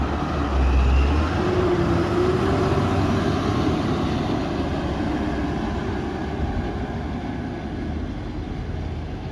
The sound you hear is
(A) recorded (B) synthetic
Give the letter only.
A